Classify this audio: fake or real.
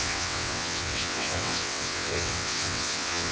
fake